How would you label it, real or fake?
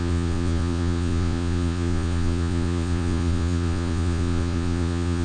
fake